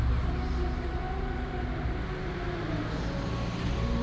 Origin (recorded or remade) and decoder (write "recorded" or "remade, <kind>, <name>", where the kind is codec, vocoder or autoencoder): recorded